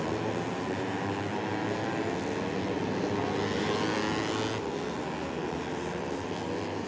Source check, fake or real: real